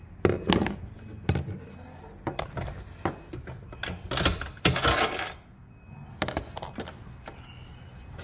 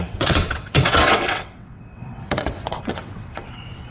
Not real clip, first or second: second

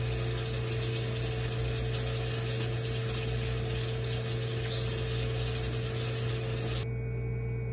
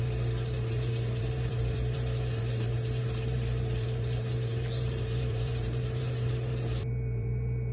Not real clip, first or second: second